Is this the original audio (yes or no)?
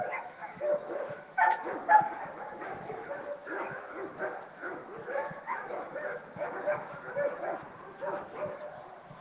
no